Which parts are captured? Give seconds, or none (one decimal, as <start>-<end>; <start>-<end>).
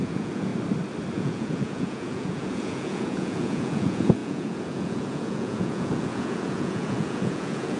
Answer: 0.5-1.1